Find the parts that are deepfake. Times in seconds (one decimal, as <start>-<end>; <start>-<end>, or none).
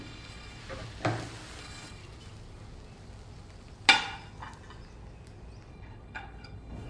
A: 0.0-0.6; 1.6-2.0; 5.7-6.9